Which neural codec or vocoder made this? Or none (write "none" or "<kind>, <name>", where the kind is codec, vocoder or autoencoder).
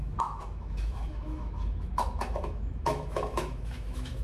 autoencoder, DAC-VAE